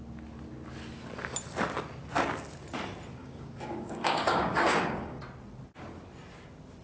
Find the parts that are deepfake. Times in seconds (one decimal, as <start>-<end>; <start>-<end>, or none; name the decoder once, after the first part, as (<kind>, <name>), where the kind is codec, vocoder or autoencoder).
3.2-5.2 (codec, DAC)